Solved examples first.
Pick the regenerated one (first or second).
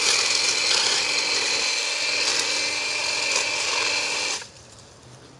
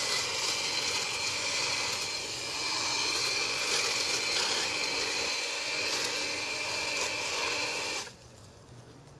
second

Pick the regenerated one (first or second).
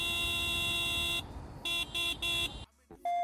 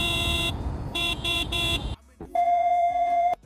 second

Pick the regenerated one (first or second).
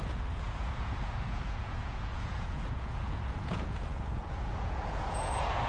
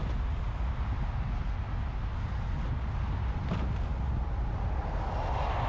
first